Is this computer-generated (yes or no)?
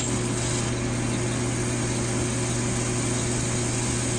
no